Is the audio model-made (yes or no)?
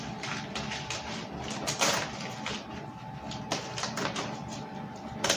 no